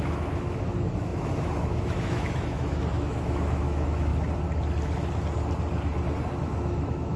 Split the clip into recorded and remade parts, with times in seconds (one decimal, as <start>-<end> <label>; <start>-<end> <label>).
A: 0.0-4.1 remade; 4.1-6.4 recorded; 6.4-7.2 remade